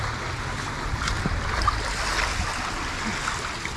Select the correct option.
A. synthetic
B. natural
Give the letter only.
B